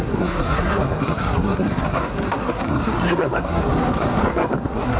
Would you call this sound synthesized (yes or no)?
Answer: yes